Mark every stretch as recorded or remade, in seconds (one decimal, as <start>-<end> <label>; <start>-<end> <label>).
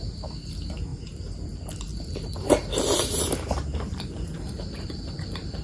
0.0-0.9 recorded; 0.9-1.4 remade; 1.4-1.9 recorded; 1.9-5.6 remade